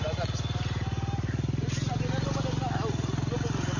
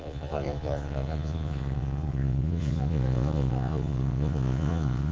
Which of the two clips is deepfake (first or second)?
second